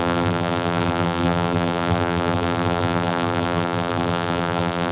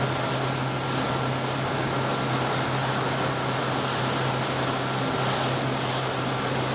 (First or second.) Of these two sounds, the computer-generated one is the first